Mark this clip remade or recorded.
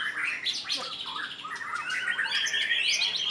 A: recorded